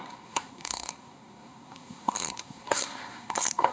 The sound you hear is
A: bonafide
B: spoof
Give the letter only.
B